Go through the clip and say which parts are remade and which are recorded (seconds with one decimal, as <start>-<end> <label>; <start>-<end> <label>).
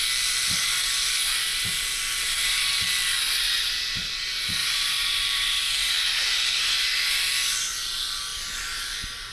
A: 0.0-2.1 recorded; 2.1-3.2 remade; 3.2-4.6 recorded; 4.6-5.6 remade; 5.6-9.3 recorded